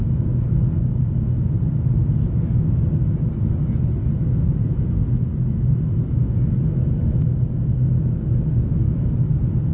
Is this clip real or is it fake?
real